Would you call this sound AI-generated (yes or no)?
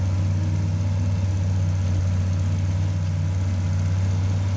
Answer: no